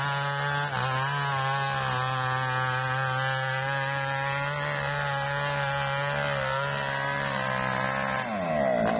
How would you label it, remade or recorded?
recorded